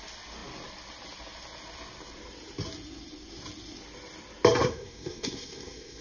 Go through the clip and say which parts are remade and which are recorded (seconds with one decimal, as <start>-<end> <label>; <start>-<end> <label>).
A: 0.0-4.6 recorded; 4.6-6.0 remade